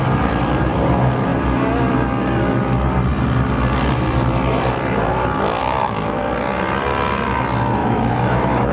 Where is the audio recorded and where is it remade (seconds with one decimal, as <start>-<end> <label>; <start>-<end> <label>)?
0.0-5.6 recorded; 5.6-6.2 remade; 6.2-7.8 recorded; 7.8-8.7 remade